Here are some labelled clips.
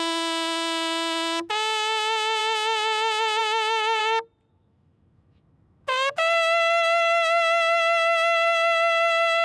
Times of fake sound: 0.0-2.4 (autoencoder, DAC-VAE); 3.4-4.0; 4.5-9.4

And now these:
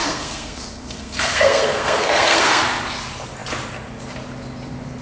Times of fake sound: 0.0-2.6 (codec, SNAC)

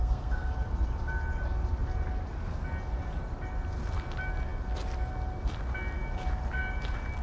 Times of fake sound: 0.0-0.5 (codec, SNAC)

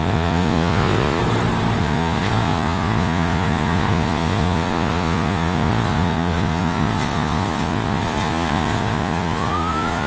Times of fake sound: 0.0-1.2 (vocoder, Vocos); 1.8-10.1

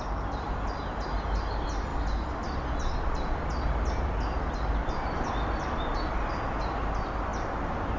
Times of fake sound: none

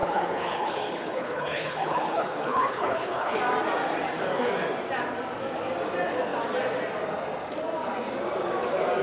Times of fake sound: 0.0-3.4 (codec, HILCodec)

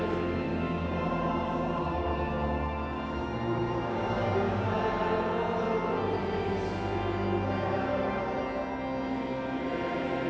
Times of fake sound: 0.5-4.7 (codec, DAC); 7.9-8.4

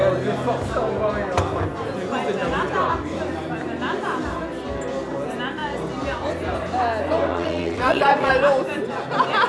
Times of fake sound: 7.3-8.3 (vocoder, WaveNeXt)